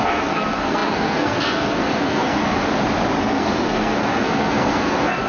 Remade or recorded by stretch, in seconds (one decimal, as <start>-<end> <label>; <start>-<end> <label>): 0.0-2.6 remade; 2.6-3.2 recorded; 3.2-5.3 remade

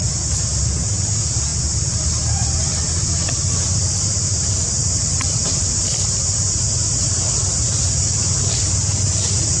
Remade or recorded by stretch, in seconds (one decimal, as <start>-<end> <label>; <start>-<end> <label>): 0.0-9.6 recorded

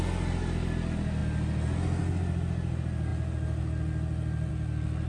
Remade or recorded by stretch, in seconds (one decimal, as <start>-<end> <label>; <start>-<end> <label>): 0.0-5.1 recorded

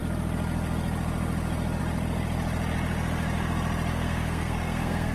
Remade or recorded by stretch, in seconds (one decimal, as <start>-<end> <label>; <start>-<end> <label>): 0.0-3.9 recorded; 3.9-5.1 remade